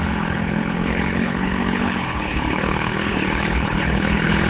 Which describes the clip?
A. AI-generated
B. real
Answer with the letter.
A